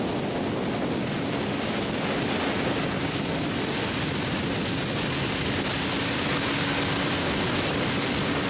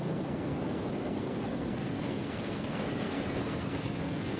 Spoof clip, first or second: second